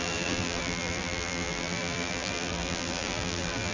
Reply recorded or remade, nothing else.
remade